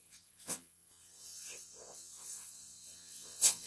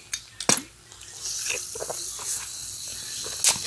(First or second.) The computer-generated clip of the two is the first